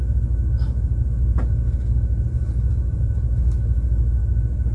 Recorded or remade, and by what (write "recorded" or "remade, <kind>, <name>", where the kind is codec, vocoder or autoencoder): recorded